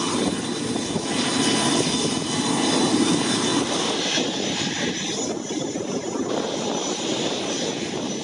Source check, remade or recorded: recorded